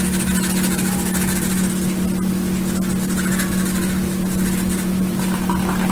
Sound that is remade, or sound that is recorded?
recorded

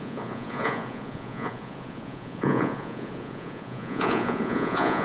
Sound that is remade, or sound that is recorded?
remade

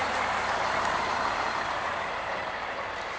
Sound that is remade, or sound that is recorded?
remade